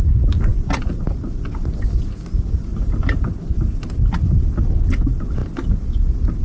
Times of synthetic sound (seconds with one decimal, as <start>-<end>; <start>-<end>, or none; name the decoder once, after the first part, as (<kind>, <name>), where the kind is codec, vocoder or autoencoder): none